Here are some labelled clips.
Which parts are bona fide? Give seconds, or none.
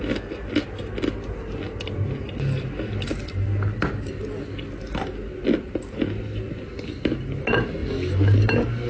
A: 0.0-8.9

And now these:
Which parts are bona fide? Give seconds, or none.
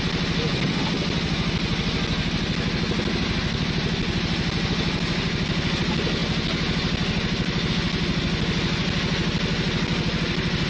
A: 0.0-10.7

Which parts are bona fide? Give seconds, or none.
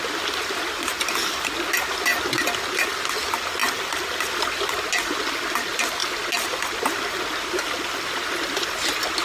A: 0.0-9.2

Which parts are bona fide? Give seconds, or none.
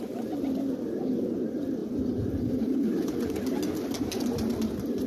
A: 0.0-1.8; 3.4-5.1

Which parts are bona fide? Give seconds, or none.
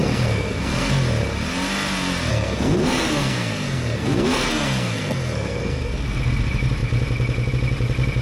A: 0.9-2.3; 6.0-8.2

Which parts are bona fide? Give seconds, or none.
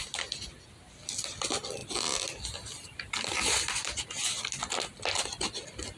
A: 0.0-6.0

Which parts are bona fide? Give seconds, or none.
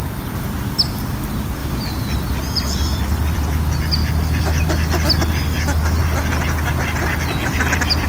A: 0.0-1.6; 3.4-4.0; 4.7-8.1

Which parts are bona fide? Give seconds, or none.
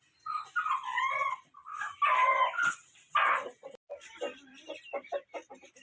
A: 0.0-5.8